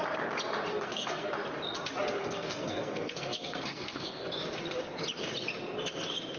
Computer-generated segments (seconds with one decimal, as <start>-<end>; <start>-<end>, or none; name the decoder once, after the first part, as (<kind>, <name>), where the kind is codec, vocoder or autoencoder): 0.7-1.3 (codec, SNAC); 2.2-4.2